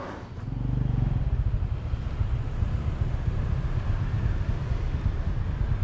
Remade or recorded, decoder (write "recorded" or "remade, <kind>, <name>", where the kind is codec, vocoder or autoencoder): recorded